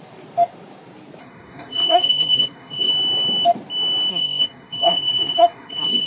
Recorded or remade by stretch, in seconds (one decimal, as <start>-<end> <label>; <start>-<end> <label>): 0.0-1.2 recorded; 1.2-2.9 remade; 2.9-4.1 recorded; 4.1-6.1 remade